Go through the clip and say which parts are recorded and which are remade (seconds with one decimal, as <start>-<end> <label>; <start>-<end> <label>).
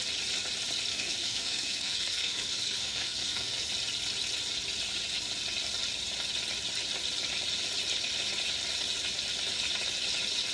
0.0-0.9 recorded; 0.9-3.7 remade; 3.7-10.5 recorded